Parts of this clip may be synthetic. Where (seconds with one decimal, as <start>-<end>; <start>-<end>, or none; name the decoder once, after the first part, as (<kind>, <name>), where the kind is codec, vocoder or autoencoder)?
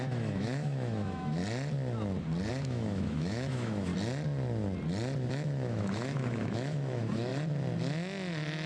0.0-1.4 (autoencoder, DAC-VAE); 2.5-3.9; 5.3-7.3